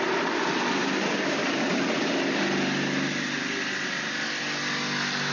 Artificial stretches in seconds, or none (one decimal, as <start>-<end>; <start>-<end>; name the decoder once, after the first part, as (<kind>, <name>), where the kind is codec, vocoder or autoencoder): none

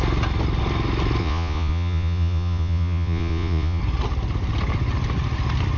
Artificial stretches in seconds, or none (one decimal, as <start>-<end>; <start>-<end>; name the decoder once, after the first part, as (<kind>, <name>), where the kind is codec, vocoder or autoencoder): 1.2-3.8 (vocoder, Vocos)

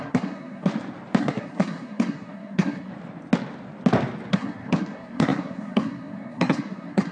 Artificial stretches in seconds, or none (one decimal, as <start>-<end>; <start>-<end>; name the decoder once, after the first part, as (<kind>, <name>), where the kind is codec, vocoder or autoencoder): 0.0-0.7 (codec, SNAC); 1.2-2.9; 4.3-7.1

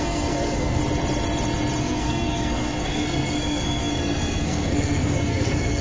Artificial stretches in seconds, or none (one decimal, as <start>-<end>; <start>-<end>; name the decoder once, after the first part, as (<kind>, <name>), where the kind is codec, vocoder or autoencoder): 0.0-0.8 (codec, SNAC); 1.8-5.8

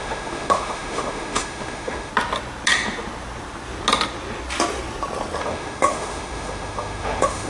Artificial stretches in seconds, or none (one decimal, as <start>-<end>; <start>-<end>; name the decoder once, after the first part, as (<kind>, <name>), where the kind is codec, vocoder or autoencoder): 0.0-2.1 (autoencoder, DAC-VAE); 5.4-7.5

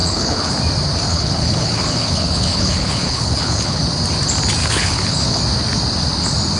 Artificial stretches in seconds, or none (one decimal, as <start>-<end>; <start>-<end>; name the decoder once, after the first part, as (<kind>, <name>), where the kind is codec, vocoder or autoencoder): 0.0-0.5 (codec, HILCodec); 1.1-3.8; 4.6-5.4

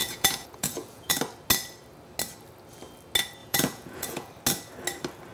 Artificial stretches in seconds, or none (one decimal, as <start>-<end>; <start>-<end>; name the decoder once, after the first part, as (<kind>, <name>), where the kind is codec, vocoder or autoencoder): 0.0-1.2 (vocoder, Vocos); 3.4-4.3

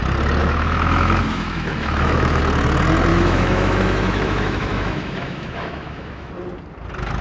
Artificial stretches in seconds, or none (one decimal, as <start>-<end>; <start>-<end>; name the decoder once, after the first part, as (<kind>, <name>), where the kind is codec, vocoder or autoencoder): 0.4-2.4 (autoencoder, DAC-VAE); 3.1-6.3